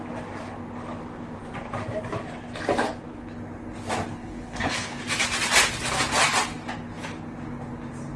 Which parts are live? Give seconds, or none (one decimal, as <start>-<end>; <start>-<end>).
0.0-4.1; 5.0-8.2